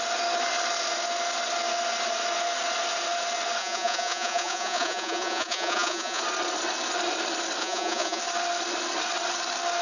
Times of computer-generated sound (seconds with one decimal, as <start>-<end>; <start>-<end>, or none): 3.6-6.2; 7.6-8.2